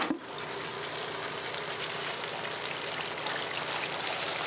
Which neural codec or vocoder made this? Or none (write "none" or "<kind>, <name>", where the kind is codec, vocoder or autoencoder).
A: none